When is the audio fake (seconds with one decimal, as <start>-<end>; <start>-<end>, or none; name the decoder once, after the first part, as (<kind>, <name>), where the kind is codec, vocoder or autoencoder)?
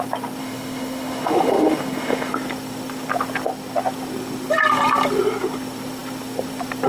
0.4-2.3 (autoencoder, DAC-VAE)